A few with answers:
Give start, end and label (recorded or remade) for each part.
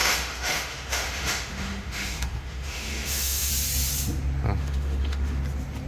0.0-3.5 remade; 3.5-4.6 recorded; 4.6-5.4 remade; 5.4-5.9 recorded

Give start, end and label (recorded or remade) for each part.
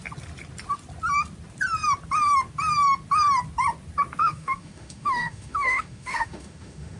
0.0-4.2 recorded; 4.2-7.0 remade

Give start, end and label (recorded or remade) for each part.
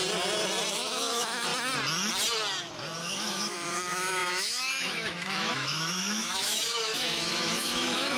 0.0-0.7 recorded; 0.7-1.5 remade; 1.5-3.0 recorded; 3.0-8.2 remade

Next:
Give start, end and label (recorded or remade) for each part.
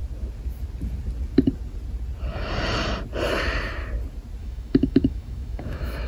0.0-4.4 recorded; 4.4-6.1 remade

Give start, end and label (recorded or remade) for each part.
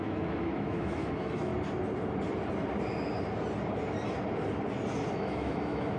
0.0-1.5 remade; 1.5-5.1 recorded; 5.1-6.0 remade